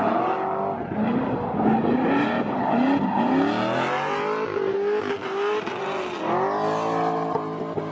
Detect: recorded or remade recorded